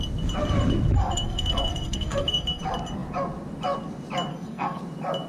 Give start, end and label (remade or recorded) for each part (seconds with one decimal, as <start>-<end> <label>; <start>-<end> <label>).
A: 0.0-1.0 recorded; 1.0-2.6 remade; 2.6-4.3 recorded; 4.3-4.8 remade; 4.8-5.3 recorded